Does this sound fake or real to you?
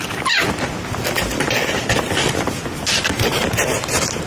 real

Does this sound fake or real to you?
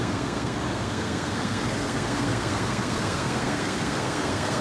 fake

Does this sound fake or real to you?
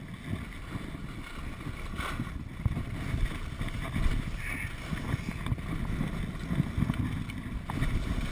real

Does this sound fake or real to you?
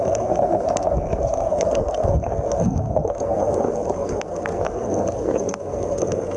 fake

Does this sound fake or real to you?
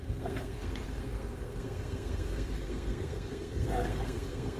fake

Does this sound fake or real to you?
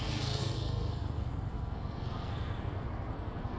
fake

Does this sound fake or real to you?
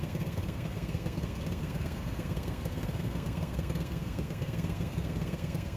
fake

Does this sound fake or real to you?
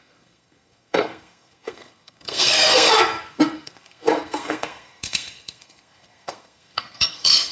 fake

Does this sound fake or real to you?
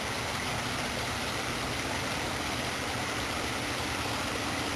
real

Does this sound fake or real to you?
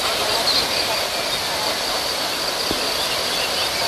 real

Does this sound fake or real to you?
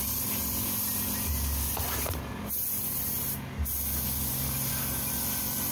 real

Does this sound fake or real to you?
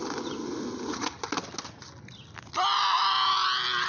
real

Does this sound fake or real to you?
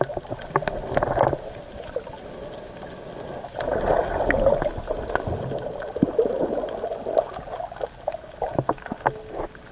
real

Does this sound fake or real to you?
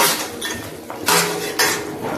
real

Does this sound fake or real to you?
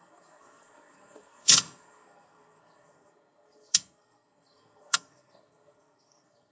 fake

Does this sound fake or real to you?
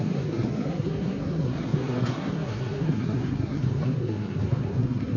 fake